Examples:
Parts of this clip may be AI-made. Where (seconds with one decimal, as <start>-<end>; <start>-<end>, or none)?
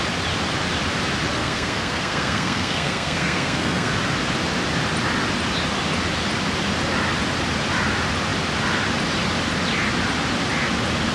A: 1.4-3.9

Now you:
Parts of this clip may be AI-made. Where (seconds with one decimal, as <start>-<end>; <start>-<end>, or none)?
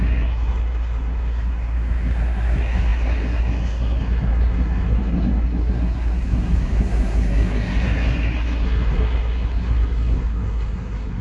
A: 0.0-11.2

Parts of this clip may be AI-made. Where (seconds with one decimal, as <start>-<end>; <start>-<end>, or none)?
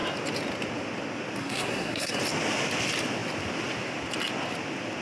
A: 1.4-2.2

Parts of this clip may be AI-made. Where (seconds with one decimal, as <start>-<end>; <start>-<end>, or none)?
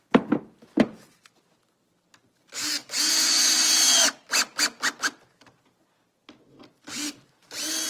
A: none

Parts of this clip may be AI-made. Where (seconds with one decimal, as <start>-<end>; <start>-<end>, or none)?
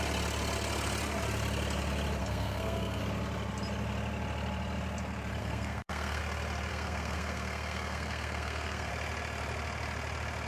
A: 2.2-3.0; 5.4-6.2; 6.7-8.9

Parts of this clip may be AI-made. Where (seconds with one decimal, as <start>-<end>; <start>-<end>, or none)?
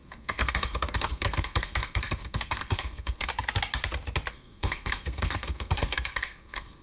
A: 0.0-3.3; 4.3-6.8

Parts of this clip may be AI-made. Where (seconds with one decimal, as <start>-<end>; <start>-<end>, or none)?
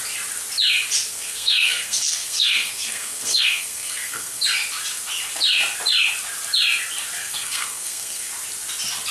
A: 1.1-4.4; 7.2-8.3